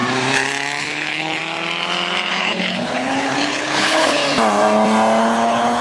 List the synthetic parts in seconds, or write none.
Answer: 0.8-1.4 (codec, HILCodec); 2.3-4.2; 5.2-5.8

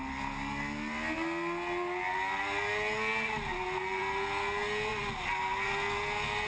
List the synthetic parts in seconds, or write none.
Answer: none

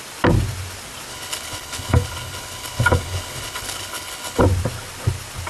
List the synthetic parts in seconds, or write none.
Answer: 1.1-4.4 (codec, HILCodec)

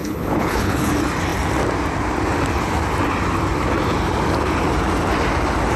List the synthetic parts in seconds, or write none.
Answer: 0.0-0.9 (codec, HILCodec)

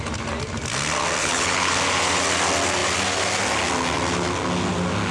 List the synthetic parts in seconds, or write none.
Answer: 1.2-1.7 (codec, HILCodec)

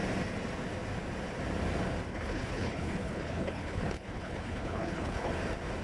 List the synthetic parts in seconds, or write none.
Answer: 2.1-5.3 (codec, HILCodec)